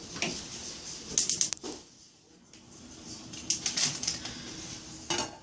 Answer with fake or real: real